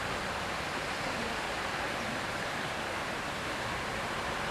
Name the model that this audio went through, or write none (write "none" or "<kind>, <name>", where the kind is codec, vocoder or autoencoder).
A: vocoder, BigVGAN v2